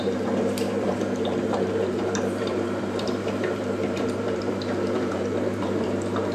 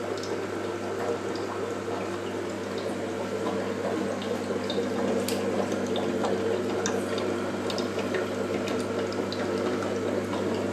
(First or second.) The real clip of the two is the second